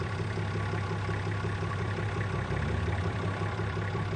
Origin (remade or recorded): remade